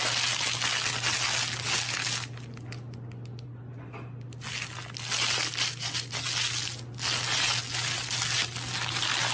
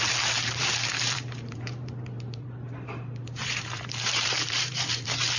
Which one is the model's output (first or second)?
second